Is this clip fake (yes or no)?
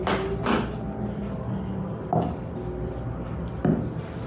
no